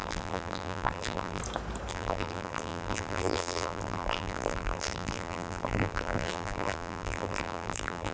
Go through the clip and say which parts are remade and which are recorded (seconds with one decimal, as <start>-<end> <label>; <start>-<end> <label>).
0.0-1.4 remade; 1.4-1.9 recorded; 1.9-8.1 remade